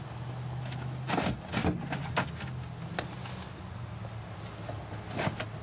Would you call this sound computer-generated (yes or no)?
no